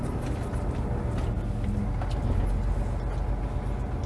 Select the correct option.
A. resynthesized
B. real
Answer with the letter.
B